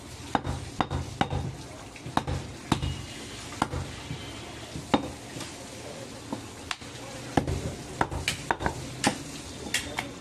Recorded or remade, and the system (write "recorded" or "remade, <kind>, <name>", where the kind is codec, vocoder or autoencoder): recorded